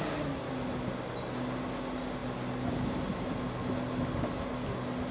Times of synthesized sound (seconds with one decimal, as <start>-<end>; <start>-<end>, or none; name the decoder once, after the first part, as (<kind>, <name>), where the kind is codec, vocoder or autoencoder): none